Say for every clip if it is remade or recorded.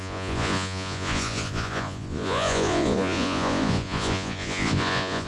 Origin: remade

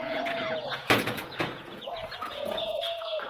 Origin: remade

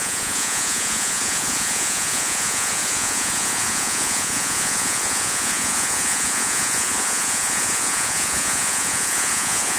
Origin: remade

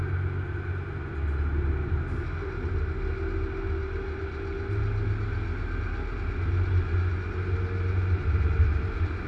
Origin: recorded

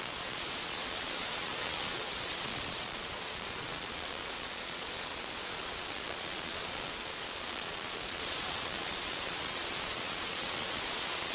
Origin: remade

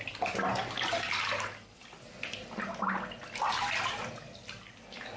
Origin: recorded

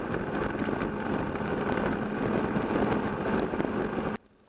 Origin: recorded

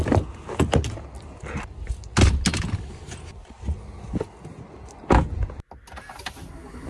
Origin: recorded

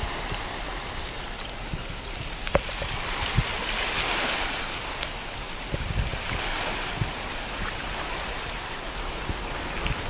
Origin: recorded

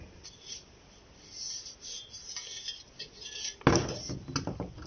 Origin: recorded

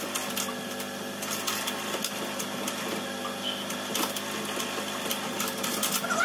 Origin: recorded